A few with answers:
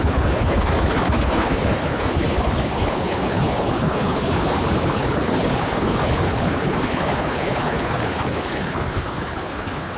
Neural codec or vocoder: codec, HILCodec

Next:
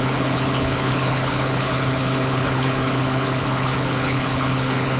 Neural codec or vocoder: codec, HILCodec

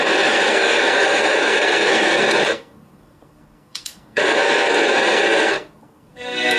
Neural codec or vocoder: codec, SNAC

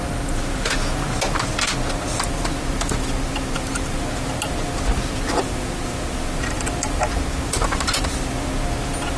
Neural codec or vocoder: none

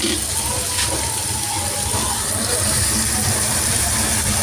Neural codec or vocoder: none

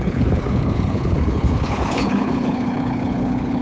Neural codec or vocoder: codec, HILCodec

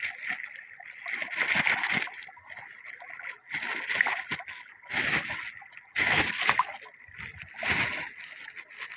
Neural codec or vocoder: none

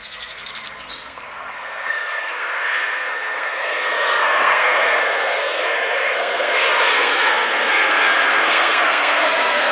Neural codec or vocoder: codec, SNAC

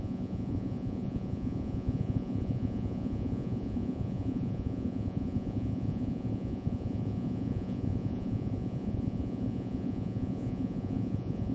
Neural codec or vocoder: vocoder, Vocos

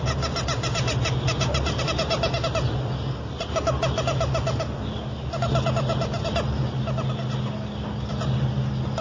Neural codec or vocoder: none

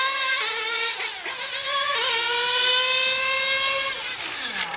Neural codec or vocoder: none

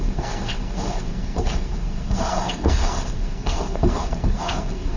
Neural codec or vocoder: codec, SNAC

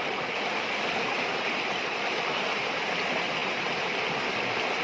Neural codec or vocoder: none